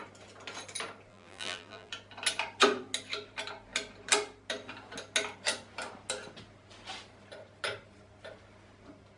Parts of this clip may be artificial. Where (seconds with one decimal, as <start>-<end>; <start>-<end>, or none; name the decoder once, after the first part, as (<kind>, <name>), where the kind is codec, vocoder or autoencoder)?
1.1-1.9 (vocoder, BigVGAN v2)